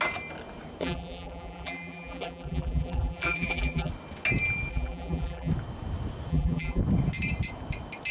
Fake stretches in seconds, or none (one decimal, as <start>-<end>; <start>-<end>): 0.8-3.9; 4.7-5.5; 6.3-6.8